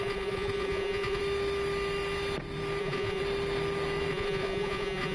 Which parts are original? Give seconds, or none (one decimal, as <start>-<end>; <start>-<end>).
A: 1.2-2.8; 3.2-4.1